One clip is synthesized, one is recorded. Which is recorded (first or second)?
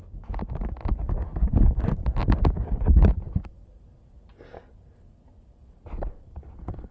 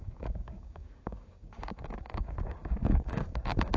first